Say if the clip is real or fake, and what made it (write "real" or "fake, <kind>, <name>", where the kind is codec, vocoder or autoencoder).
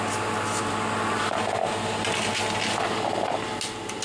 real